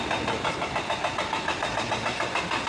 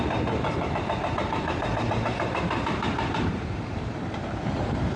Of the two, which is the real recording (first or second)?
first